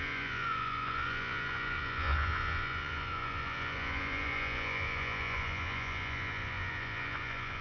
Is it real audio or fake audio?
fake